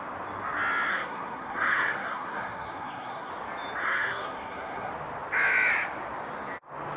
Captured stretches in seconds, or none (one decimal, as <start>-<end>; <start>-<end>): 0.0-0.9; 3.3-3.8; 4.9-7.0